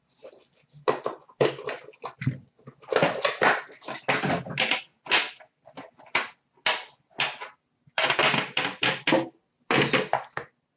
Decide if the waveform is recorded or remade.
recorded